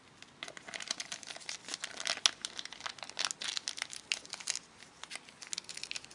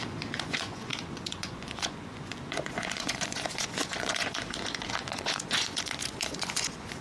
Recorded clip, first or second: first